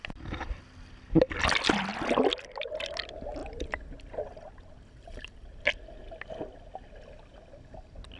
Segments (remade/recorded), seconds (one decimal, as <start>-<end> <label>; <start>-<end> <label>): 0.0-8.2 recorded